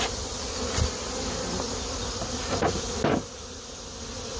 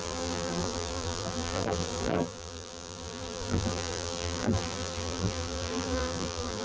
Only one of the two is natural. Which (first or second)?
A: first